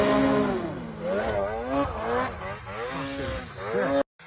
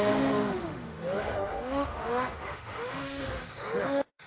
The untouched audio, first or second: first